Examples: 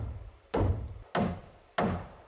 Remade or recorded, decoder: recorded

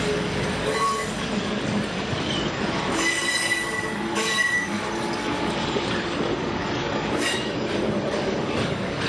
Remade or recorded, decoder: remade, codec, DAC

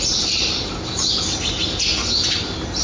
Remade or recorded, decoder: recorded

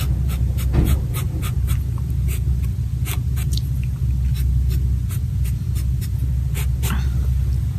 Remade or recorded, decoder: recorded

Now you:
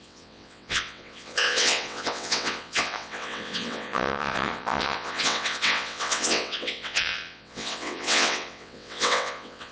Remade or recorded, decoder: remade, vocoder, WaveNeXt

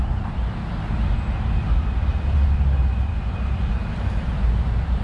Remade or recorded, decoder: recorded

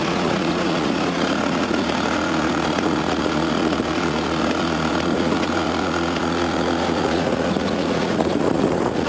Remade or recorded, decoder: remade, vocoder, Vocos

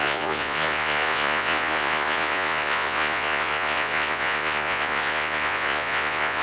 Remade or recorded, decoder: remade, vocoder, Vocos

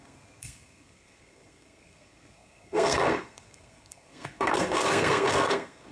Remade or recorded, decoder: remade, codec, SNAC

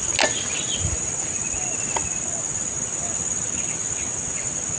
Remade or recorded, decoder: recorded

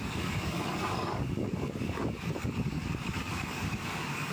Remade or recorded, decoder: remade, codec, DAC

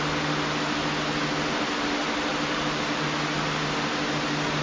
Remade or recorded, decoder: recorded